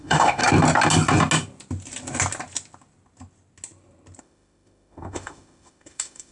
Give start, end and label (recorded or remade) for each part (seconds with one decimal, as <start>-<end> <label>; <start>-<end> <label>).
0.0-0.4 remade; 0.4-4.2 recorded; 4.2-6.3 remade